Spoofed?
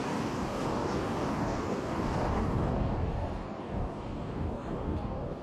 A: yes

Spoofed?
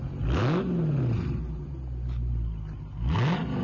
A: no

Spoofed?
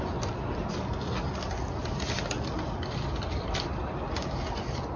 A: no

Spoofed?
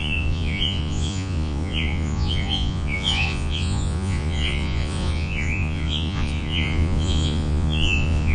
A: yes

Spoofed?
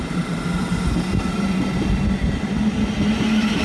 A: no